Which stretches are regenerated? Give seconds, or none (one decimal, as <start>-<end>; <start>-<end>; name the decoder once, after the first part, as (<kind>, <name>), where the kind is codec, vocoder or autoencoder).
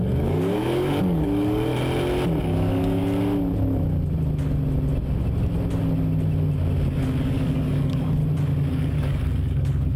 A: 0.0-1.7 (codec, DAC); 2.4-3.0; 7.2-8.2; 8.7-10.0